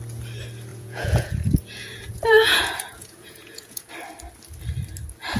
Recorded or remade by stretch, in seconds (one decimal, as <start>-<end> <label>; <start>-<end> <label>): 0.0-0.7 recorded; 0.7-3.9 remade; 3.9-5.4 recorded

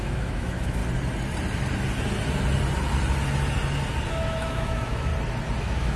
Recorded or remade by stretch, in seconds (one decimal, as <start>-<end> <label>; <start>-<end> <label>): 0.0-0.8 remade; 0.8-4.1 recorded; 4.1-5.1 remade; 5.1-5.6 recorded; 5.6-6.0 remade

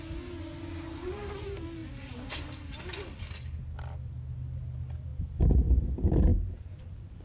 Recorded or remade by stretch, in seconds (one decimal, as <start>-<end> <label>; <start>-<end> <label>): 0.0-6.3 recorded; 6.3-6.8 remade; 6.8-7.2 recorded

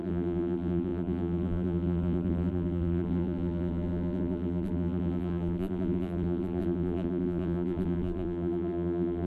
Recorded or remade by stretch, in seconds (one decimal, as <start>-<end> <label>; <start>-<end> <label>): 0.0-9.3 remade